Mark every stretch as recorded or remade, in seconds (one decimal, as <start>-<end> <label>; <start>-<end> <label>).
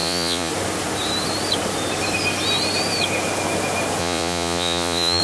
0.0-0.5 remade; 0.5-4.0 recorded; 4.0-5.2 remade